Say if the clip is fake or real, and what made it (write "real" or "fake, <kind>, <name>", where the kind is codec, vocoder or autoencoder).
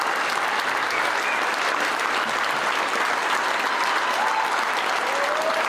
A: real